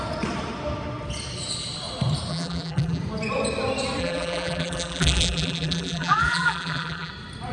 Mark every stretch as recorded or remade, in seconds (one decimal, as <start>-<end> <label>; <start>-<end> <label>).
0.0-2.3 recorded; 2.3-3.0 remade; 3.0-4.0 recorded; 4.0-7.1 remade; 7.1-7.5 recorded